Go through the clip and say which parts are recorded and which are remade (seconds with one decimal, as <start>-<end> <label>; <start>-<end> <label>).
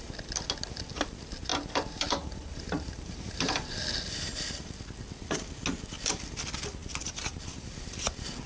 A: 0.0-1.5 recorded; 1.5-3.7 remade; 3.7-7.0 recorded; 7.0-7.7 remade; 7.7-8.5 recorded